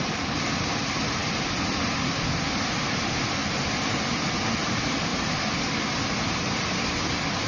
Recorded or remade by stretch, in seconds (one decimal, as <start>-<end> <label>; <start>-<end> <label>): 0.0-7.5 recorded